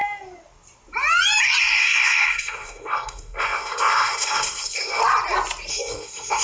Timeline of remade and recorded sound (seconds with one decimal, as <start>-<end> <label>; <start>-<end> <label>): 0.0-1.6 recorded; 1.6-5.0 remade; 5.0-5.7 recorded; 5.7-6.4 remade